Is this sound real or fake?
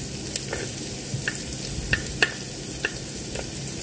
real